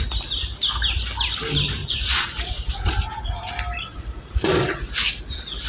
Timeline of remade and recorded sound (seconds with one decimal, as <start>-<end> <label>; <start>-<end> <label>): 0.0-1.8 recorded; 1.8-3.5 remade; 3.5-3.9 recorded; 3.9-4.9 remade; 4.9-5.7 recorded